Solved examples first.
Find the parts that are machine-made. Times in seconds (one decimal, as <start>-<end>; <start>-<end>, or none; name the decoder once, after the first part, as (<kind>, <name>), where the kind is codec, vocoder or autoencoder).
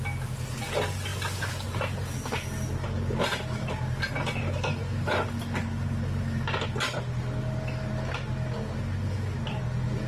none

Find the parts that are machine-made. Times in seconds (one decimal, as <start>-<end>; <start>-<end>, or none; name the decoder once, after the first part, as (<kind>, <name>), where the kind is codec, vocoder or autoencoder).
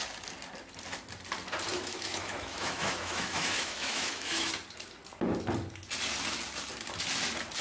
1.7-4.5 (autoencoder, DAC-VAE)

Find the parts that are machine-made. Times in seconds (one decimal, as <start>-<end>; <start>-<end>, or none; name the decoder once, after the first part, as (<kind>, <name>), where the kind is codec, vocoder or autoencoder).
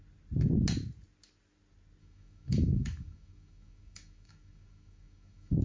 2.0-5.6 (autoencoder, DAC-VAE)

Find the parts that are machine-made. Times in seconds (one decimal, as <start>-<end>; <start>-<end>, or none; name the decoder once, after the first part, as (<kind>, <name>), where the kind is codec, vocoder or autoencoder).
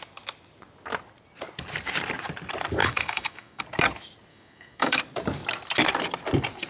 2.8-3.6 (autoencoder, DAC-VAE); 4.3-5.0